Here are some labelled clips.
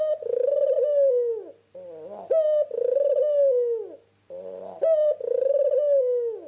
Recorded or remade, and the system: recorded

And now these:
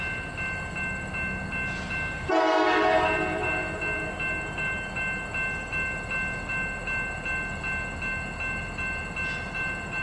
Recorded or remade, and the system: recorded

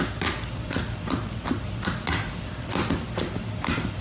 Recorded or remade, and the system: recorded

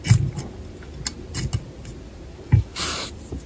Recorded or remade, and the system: recorded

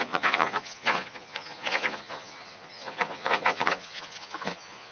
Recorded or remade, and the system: remade, vocoder, Vocos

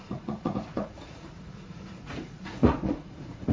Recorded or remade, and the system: remade, vocoder, Vocos